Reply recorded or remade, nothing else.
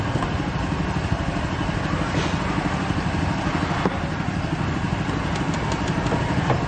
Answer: recorded